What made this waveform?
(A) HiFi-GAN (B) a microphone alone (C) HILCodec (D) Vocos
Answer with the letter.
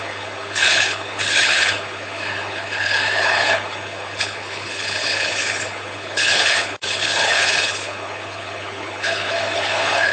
C